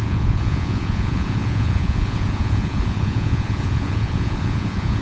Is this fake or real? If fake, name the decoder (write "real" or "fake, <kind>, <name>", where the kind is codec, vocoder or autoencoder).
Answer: fake, vocoder, Vocos